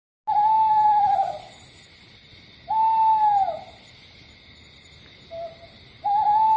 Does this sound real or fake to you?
real